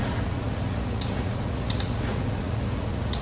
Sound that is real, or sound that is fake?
fake